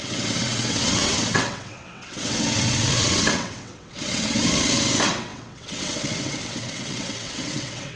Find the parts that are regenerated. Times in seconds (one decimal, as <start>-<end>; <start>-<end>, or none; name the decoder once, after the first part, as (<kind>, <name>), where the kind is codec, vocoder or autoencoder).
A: 0.0-8.0 (vocoder, WaveNeXt)